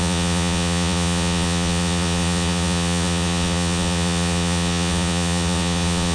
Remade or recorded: remade